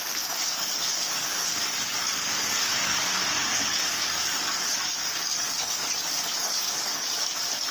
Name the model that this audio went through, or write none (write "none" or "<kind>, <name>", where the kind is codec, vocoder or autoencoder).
codec, DAC